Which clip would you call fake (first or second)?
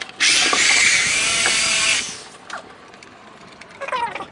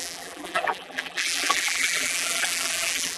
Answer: second